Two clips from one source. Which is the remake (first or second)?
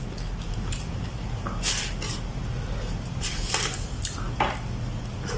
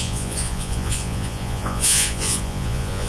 second